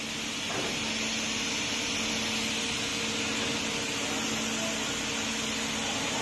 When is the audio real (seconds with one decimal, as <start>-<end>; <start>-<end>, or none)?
0.0-6.2